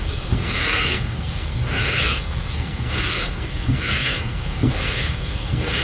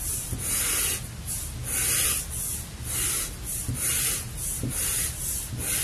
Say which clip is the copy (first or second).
first